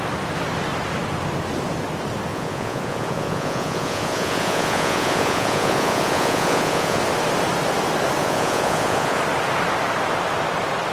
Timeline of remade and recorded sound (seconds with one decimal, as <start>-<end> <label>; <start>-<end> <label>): 0.0-2.3 recorded; 2.3-7.0 remade; 7.0-8.2 recorded; 8.2-9.2 remade; 9.2-10.9 recorded